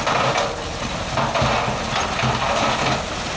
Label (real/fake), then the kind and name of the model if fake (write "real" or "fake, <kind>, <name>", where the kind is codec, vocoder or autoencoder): real